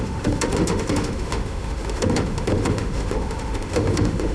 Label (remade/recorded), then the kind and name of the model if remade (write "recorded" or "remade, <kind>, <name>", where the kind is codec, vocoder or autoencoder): remade, autoencoder, DAC-VAE